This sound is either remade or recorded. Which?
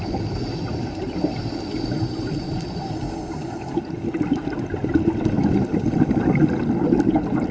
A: recorded